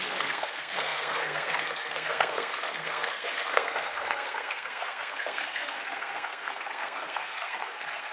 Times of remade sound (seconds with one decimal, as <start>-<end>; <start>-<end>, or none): 0.0-8.1